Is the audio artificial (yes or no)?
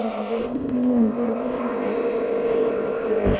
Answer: yes